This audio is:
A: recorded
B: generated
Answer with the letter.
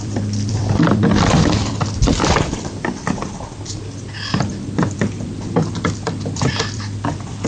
B